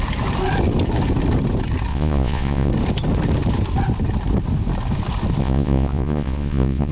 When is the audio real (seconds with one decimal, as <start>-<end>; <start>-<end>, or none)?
0.0-1.9; 2.7-5.4